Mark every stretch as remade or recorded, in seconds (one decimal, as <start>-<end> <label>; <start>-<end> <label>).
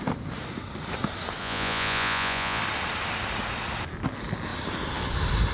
0.0-1.4 recorded; 1.4-2.6 remade; 2.6-5.5 recorded